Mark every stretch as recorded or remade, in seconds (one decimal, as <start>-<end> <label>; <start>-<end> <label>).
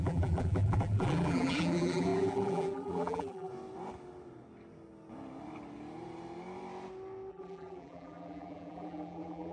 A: 0.0-3.5 remade; 3.5-7.3 recorded; 7.3-9.5 remade